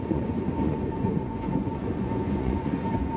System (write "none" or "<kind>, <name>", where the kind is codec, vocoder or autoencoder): vocoder, Vocos